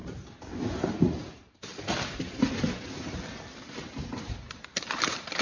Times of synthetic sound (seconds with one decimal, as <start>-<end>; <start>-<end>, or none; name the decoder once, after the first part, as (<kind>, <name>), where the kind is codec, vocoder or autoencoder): 0.7-1.7 (vocoder, BigVGAN v2); 4.9-5.4